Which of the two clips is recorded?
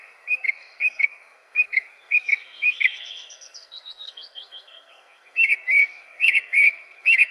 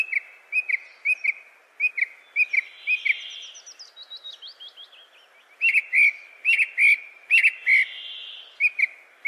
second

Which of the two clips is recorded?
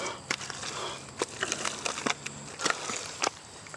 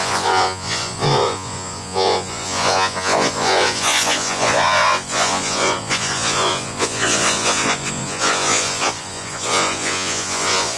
first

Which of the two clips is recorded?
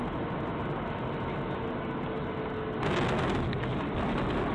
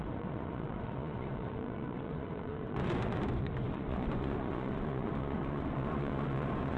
first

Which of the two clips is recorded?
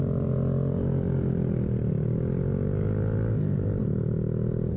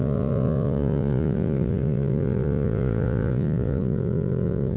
first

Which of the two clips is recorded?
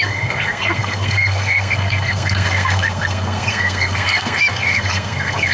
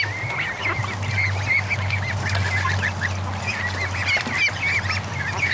second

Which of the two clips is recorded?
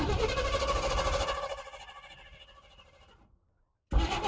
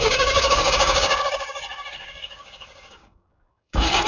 first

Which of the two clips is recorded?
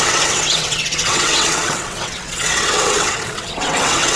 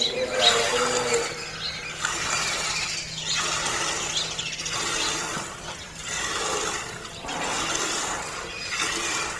second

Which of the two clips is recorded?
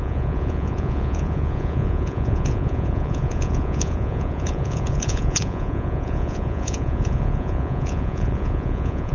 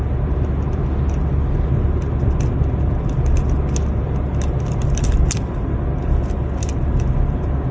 second